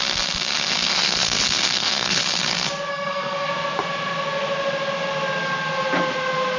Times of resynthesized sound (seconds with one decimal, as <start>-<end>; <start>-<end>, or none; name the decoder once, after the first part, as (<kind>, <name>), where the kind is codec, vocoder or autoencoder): 0.7-2.2 (codec, SNAC); 2.9-3.5